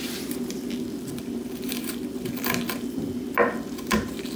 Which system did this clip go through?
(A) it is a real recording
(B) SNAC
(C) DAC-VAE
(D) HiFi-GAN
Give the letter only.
A